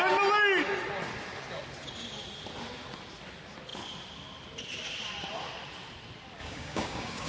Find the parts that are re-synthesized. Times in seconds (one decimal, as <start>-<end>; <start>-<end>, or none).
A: 6.4-7.3